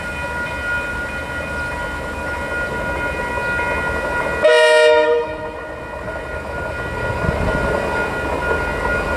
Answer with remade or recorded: recorded